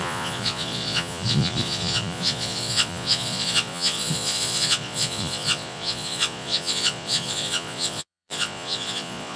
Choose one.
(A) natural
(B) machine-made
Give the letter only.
B